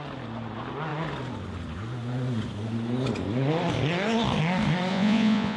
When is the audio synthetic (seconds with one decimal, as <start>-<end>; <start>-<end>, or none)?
4.9-5.6